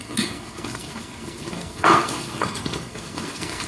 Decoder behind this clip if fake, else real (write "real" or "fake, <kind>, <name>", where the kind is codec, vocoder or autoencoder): fake, codec, SNAC